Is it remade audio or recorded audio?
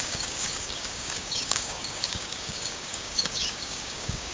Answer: remade